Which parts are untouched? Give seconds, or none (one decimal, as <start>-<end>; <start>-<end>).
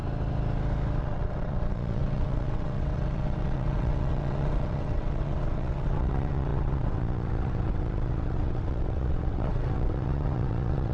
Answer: 0.0-1.0